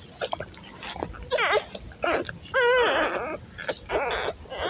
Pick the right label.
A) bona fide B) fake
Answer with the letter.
A